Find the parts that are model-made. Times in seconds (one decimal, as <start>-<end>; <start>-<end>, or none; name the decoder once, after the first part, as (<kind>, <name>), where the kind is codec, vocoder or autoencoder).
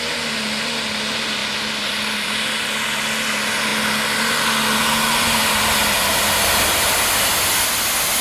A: none